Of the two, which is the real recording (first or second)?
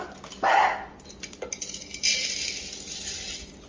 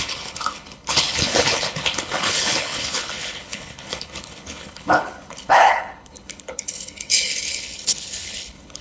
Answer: first